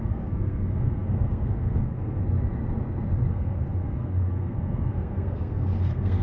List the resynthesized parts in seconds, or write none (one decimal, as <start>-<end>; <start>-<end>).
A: 0.0-2.2; 3.3-6.2